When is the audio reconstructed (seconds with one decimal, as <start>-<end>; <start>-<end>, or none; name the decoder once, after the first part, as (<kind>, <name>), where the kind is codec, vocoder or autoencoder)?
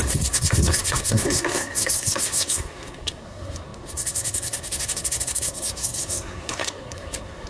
0.0-7.5 (codec, SNAC)